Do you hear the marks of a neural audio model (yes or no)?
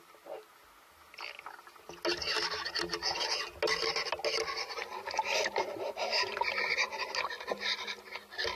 no